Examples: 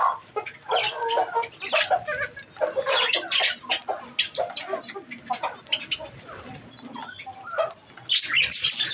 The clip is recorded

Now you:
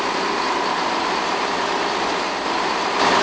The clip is recorded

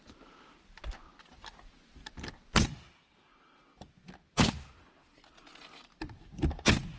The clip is recorded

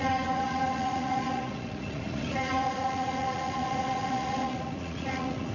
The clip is remade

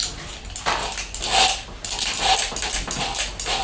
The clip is recorded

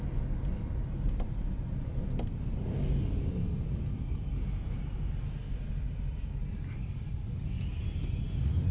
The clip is recorded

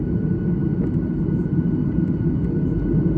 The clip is recorded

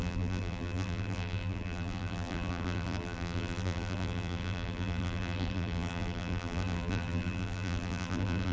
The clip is remade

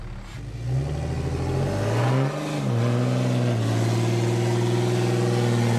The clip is recorded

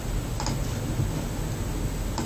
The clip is recorded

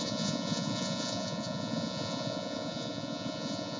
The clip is remade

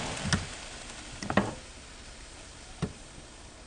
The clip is recorded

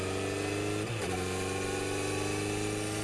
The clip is recorded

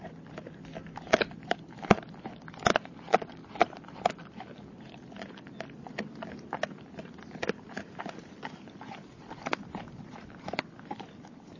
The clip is recorded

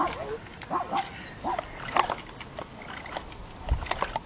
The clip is recorded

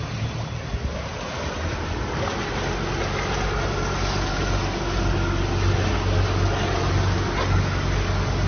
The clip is recorded